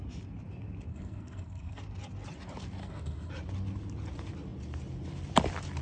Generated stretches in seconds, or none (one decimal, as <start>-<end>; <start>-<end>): 0.9-1.8; 2.8-3.3